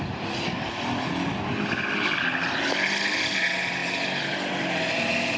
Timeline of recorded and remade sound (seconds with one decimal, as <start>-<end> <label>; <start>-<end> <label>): 0.0-5.4 recorded